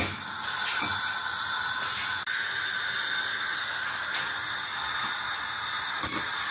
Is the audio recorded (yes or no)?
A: yes